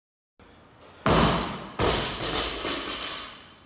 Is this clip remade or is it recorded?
recorded